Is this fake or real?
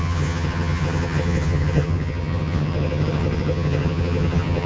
fake